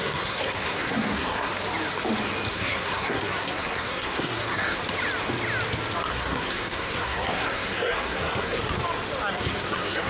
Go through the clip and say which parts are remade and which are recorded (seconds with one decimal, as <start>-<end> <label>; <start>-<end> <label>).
0.0-1.5 remade; 1.5-2.5 recorded; 2.5-4.8 remade; 4.8-6.1 recorded; 6.1-8.6 remade; 8.6-9.3 recorded; 9.3-10.1 remade